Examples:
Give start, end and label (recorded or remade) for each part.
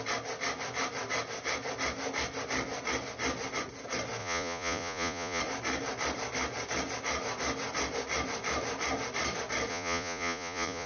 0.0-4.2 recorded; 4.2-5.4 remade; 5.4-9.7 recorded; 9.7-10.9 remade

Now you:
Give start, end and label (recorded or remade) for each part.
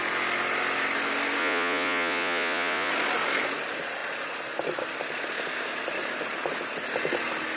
0.0-1.4 recorded; 1.4-2.9 remade; 2.9-7.6 recorded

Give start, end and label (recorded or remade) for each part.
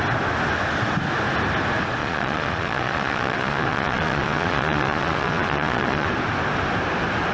0.0-2.0 recorded; 2.0-6.1 remade; 6.1-7.3 recorded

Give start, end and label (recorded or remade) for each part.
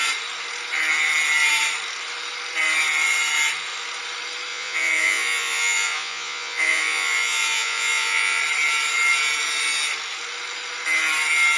0.0-4.5 recorded; 4.5-8.4 remade; 8.4-11.6 recorded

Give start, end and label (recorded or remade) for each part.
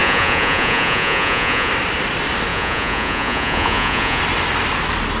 0.0-1.7 remade; 1.7-2.5 recorded; 2.5-4.2 remade; 4.2-5.2 recorded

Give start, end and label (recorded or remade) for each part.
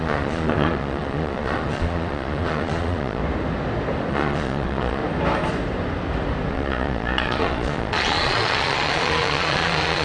0.0-3.2 remade; 3.2-4.1 recorded; 4.1-5.0 remade; 5.0-6.5 recorded; 6.5-10.0 remade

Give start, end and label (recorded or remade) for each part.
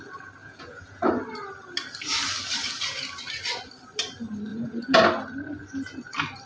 0.0-0.4 recorded; 0.4-1.0 remade; 1.0-4.5 recorded; 4.5-5.0 remade; 5.0-6.5 recorded